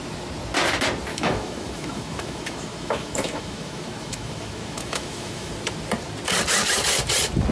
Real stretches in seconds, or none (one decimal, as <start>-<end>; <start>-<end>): 0.0-1.1; 5.5-7.5